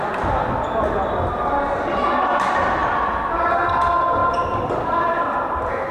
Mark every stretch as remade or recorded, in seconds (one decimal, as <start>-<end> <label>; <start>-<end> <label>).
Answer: 0.0-2.8 recorded; 2.8-3.5 remade; 3.5-4.2 recorded; 4.2-5.5 remade; 5.5-5.9 recorded